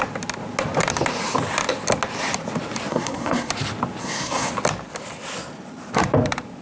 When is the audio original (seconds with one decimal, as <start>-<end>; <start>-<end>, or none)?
0.0-2.9; 3.5-4.0; 4.5-6.6